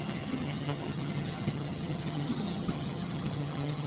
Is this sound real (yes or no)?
no